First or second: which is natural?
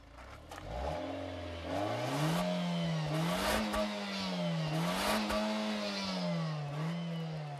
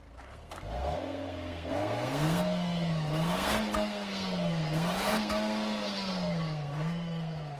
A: first